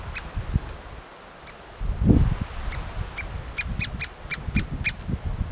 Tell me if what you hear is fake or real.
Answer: real